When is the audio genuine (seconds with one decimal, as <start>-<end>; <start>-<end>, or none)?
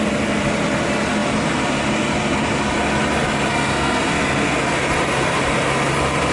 0.0-3.5; 4.6-6.3